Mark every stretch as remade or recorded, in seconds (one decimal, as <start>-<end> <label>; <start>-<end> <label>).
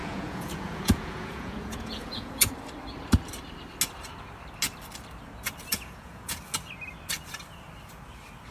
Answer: 0.0-2.5 remade; 2.5-5.7 recorded; 5.7-6.4 remade; 6.4-8.5 recorded